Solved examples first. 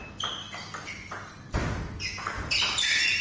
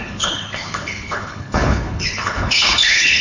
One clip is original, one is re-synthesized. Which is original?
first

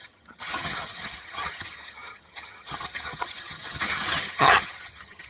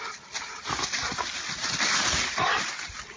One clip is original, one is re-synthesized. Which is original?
second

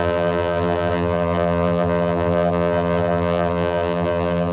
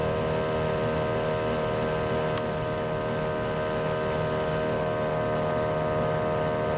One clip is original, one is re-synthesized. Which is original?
second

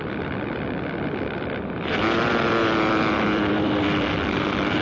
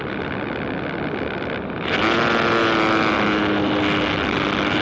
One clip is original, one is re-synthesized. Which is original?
second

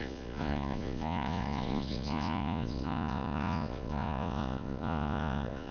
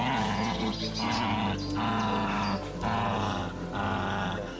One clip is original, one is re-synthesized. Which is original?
second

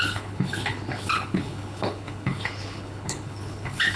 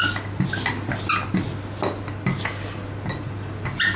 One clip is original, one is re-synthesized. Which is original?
second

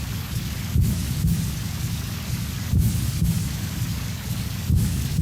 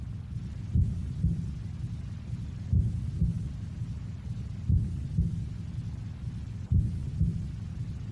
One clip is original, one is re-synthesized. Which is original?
second